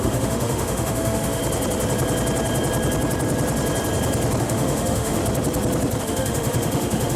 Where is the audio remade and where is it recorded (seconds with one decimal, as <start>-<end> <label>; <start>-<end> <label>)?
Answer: 0.0-1.4 remade; 1.4-4.4 recorded; 4.4-5.2 remade; 5.2-6.0 recorded; 6.0-7.2 remade